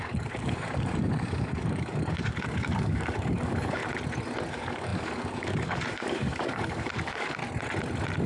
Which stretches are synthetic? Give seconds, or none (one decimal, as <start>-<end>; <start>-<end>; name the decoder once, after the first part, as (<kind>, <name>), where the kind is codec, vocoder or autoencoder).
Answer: 0.0-3.8 (codec, DAC); 4.5-7.4